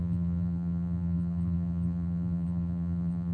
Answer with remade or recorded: remade